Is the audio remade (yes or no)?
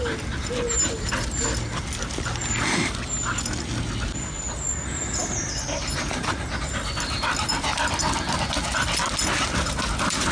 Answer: no